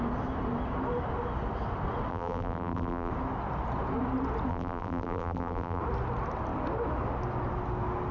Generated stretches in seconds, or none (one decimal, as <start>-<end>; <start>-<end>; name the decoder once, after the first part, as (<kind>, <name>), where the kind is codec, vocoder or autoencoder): 2.1-3.1 (vocoder, BigVGAN v2); 4.5-5.8